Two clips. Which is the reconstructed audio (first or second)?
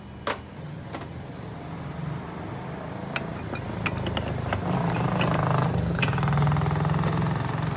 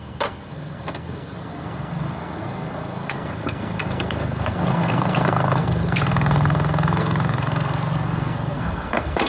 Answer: second